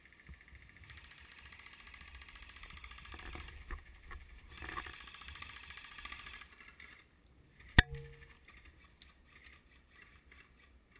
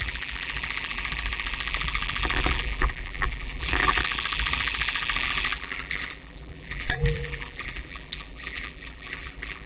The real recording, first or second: first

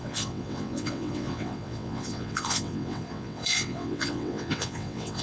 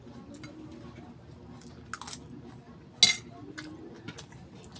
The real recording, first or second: second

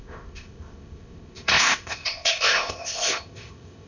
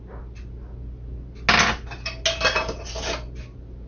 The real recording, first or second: second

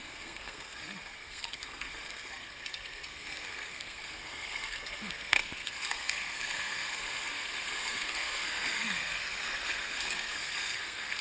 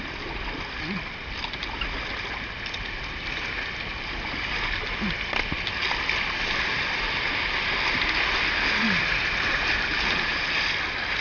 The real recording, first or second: second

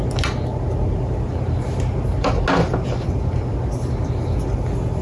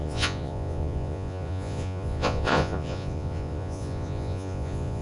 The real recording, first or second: first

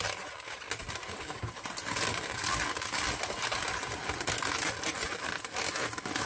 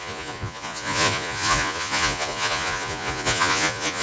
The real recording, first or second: first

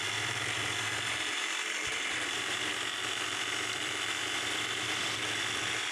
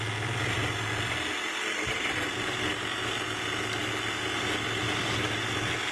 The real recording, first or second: second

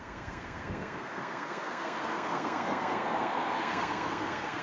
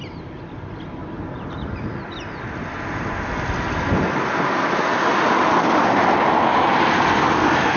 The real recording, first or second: second